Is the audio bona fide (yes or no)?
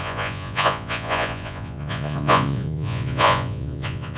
no